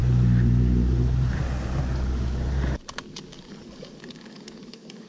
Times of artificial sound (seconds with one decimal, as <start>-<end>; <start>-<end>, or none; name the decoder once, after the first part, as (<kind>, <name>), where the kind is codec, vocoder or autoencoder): 2.9-5.1 (codec, DAC)